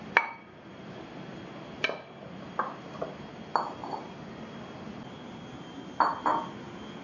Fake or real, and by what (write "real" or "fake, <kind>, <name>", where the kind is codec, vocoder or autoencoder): real